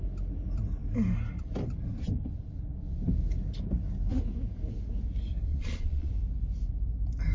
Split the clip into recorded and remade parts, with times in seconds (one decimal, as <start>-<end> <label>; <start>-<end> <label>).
0.0-5.5 recorded; 5.5-6.1 remade; 6.1-7.3 recorded